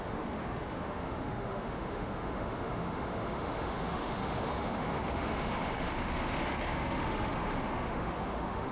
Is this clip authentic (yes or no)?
no